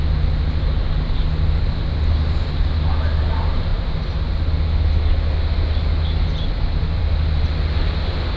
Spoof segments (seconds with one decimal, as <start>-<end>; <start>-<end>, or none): none

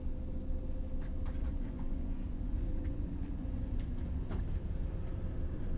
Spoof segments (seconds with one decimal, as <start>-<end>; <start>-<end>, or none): 1.4-4.4

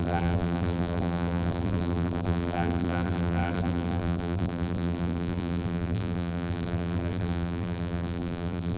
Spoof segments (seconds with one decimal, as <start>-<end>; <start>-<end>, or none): 0.0-8.8

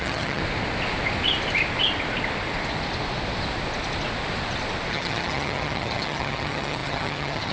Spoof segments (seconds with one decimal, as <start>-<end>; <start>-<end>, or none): 0.0-0.4; 4.9-7.5

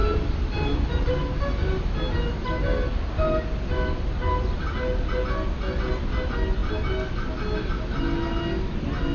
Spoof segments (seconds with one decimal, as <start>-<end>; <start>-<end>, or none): 0.0-1.1